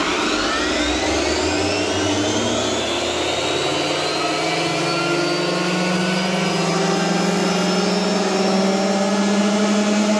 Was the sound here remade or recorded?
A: recorded